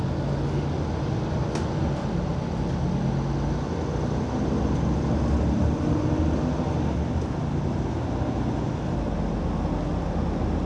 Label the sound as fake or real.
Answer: real